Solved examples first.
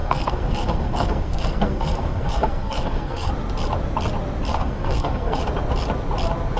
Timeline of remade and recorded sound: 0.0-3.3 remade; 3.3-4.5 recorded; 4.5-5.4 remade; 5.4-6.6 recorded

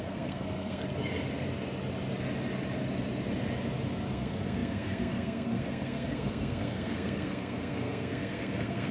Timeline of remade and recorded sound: 0.0-0.8 remade; 0.8-4.1 recorded; 4.1-8.9 remade